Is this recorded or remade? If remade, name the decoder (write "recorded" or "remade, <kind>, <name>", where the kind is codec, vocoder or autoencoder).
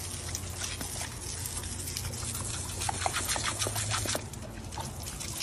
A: recorded